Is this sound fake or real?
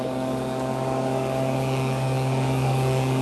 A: fake